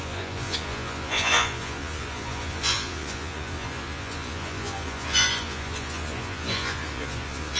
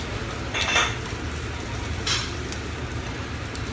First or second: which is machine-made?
first